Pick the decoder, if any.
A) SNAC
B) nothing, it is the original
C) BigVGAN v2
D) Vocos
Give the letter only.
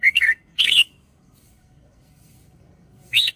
A